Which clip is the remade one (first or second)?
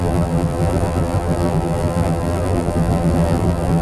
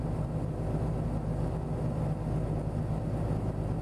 first